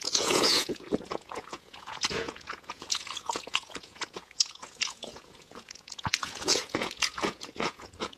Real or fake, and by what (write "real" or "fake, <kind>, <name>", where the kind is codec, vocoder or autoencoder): fake, vocoder, Vocos